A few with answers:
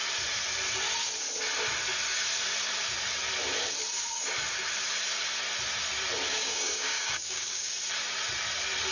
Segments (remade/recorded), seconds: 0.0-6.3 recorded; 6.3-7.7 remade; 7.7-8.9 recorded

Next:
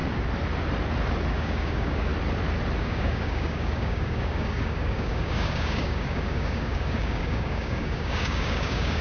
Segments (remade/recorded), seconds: 0.0-1.3 recorded; 1.3-2.1 remade; 2.1-2.8 recorded; 2.8-9.0 remade